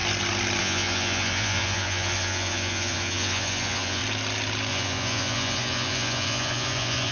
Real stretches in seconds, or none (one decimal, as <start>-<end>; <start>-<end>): 0.0-0.6; 4.0-4.7